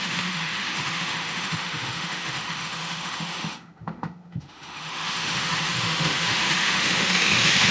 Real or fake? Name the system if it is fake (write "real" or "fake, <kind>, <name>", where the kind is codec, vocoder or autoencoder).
fake, autoencoder, DAC-VAE